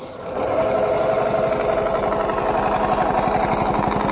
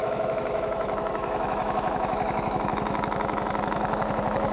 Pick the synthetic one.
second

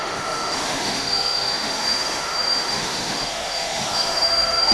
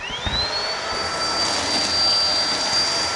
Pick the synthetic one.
first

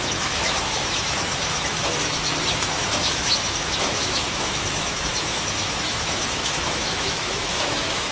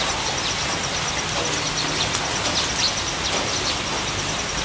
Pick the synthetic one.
first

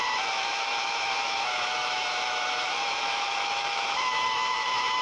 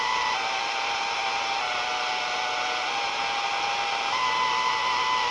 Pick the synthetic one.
first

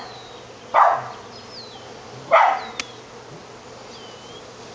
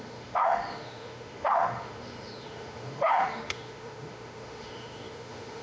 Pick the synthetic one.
second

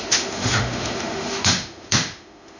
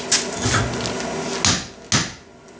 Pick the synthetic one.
first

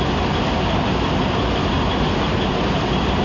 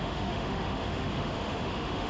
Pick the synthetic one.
second